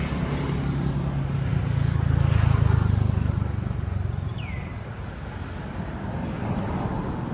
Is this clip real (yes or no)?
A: yes